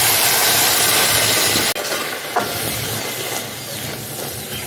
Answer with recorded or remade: recorded